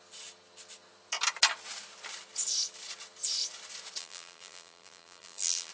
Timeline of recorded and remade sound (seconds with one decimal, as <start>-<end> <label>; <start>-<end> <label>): 0.0-4.0 recorded; 4.0-5.7 remade